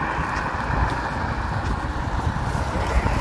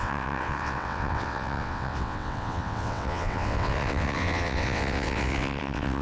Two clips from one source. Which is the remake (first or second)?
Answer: second